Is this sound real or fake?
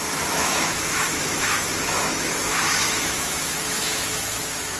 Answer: fake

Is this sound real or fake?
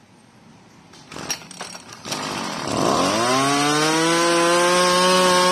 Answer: real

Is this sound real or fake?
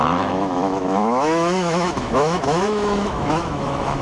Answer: fake